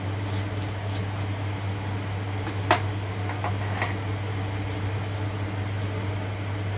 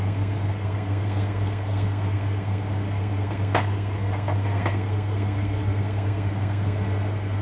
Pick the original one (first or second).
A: first